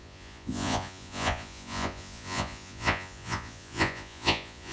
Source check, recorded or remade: remade